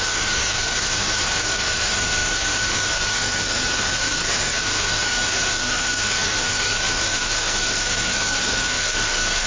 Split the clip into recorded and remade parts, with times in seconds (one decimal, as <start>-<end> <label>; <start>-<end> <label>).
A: 0.0-9.5 remade

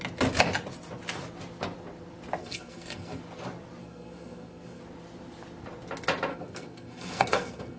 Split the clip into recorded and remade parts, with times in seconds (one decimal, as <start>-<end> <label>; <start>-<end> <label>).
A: 0.0-2.4 recorded; 2.4-3.2 remade; 3.2-3.8 recorded; 3.8-4.8 remade; 4.8-6.3 recorded; 6.3-7.8 remade

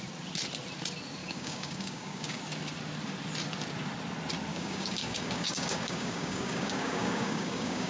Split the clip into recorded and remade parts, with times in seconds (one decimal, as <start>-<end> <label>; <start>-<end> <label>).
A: 0.0-1.2 recorded; 1.2-2.4 remade; 2.4-4.5 recorded; 4.5-7.9 remade

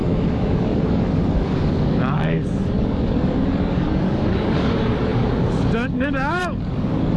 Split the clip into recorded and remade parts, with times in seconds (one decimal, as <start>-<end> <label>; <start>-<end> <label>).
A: 0.0-7.2 remade

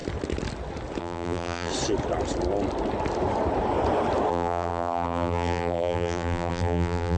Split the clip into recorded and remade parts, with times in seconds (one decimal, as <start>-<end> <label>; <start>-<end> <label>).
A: 0.0-1.0 recorded; 1.0-1.7 remade; 1.7-4.3 recorded; 4.3-7.2 remade